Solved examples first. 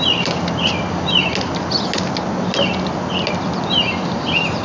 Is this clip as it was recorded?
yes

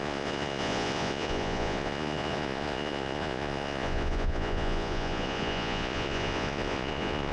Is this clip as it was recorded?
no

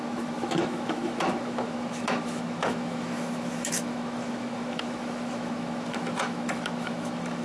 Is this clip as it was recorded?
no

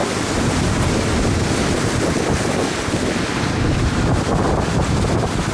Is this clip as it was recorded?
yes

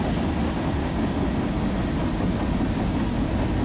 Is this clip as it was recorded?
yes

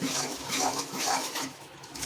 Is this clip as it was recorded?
no